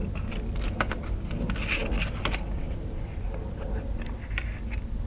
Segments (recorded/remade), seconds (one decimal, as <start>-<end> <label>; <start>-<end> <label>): 0.0-5.1 recorded